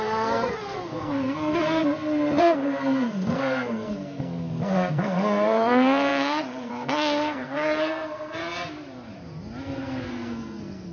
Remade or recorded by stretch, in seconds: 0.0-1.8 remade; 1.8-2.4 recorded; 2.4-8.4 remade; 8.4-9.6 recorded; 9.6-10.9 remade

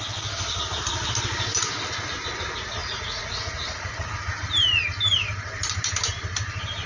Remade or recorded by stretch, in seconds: 0.0-1.5 recorded; 1.5-2.2 remade; 2.2-2.8 recorded; 2.8-4.1 remade; 4.1-6.9 recorded

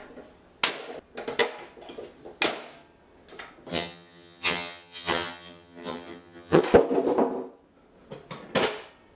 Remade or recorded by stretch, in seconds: 0.0-3.7 recorded; 3.7-6.6 remade; 6.6-9.2 recorded